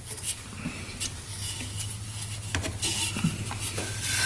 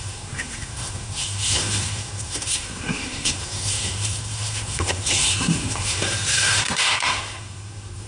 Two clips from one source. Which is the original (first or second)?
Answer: first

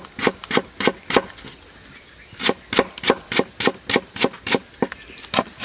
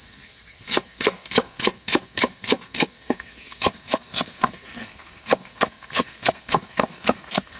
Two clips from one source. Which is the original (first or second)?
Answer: first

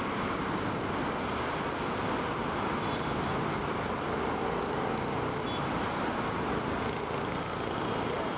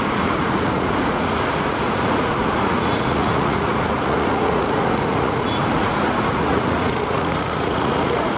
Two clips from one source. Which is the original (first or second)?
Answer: first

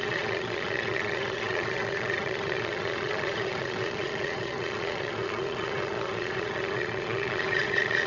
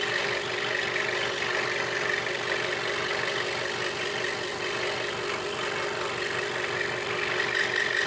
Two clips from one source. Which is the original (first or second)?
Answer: second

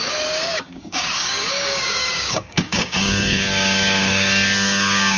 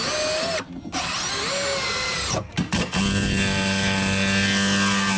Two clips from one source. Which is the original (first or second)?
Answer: second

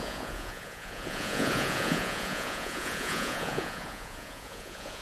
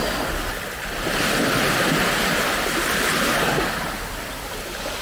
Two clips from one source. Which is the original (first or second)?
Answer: second